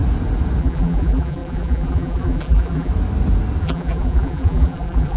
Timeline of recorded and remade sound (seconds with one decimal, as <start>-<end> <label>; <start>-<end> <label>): 0.0-0.6 recorded; 0.6-2.9 remade; 2.9-3.6 recorded; 3.6-5.2 remade